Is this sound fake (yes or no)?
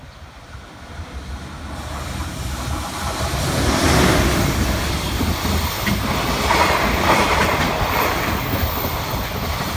no